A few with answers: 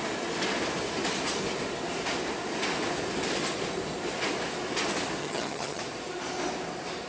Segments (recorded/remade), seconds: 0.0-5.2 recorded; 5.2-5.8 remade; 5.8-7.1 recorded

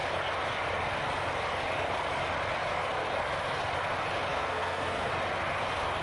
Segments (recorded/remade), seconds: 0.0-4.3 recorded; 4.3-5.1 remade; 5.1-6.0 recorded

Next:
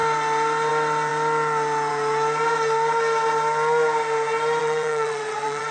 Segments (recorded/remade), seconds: 0.0-4.6 recorded; 4.6-5.7 remade